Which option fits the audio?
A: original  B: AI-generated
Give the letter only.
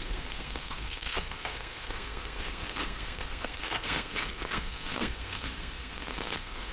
B